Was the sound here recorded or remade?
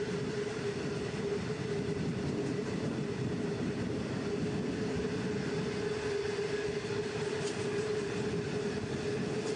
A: recorded